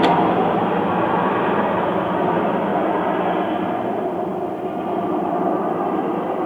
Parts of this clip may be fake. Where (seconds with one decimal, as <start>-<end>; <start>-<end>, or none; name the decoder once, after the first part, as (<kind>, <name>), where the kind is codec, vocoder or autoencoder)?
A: 0.0-2.7 (vocoder, BigVGAN v2); 3.6-6.5